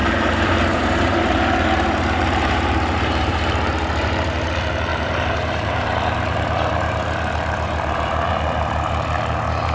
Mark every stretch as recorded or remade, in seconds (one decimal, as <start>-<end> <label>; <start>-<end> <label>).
0.0-4.5 remade; 4.5-4.9 recorded; 4.9-8.3 remade; 8.3-9.7 recorded